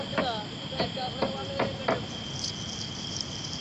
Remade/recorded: recorded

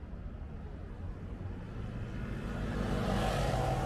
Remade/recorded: recorded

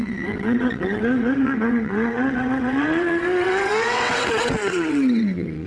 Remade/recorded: remade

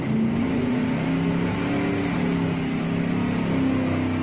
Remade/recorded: recorded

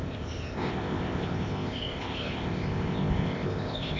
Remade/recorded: remade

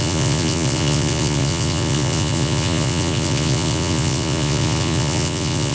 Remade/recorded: remade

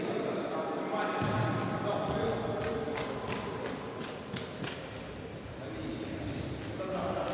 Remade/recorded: recorded